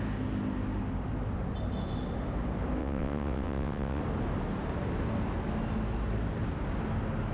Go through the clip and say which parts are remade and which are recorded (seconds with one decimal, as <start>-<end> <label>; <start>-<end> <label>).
0.0-2.8 recorded; 2.8-4.0 remade; 4.0-7.3 recorded

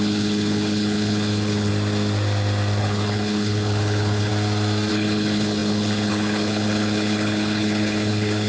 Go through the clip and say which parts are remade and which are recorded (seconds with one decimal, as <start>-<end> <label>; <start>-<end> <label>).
0.0-1.7 remade; 1.7-2.8 recorded; 2.8-4.3 remade; 4.3-4.9 recorded; 4.9-8.5 remade